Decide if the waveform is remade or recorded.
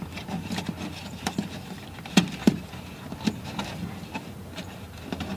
remade